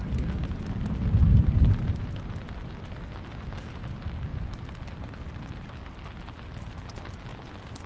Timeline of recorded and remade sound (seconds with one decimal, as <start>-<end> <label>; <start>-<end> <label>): 0.0-1.3 recorded; 1.3-2.2 remade; 2.2-7.9 recorded